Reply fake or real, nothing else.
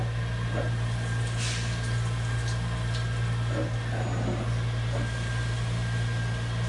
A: real